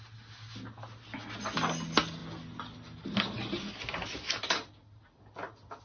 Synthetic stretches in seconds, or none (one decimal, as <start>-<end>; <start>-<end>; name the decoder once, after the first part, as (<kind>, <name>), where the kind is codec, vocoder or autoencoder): none